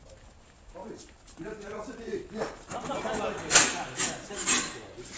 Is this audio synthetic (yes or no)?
no